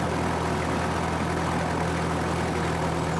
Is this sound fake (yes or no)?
no